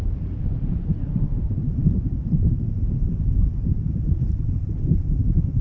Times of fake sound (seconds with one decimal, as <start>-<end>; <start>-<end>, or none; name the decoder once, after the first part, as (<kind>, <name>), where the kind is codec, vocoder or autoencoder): 0.0-5.6 (vocoder, BigVGAN v2)